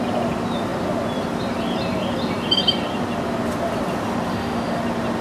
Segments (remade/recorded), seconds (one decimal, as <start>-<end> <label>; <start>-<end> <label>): 0.0-4.3 recorded; 4.3-4.8 remade; 4.8-5.2 recorded